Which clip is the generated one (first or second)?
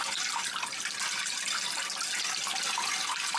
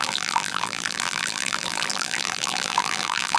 second